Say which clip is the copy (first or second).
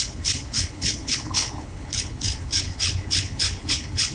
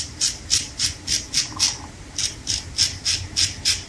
first